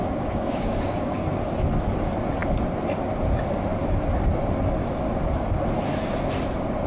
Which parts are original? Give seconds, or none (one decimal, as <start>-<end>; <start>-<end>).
1.4-6.9

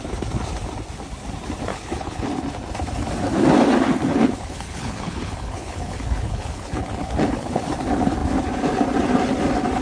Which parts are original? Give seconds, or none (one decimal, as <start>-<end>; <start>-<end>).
0.0-1.7; 2.3-4.1; 7.6-9.8

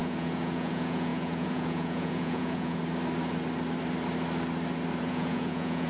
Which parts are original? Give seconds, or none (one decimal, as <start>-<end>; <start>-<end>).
2.8-5.0